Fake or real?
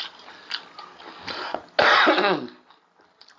real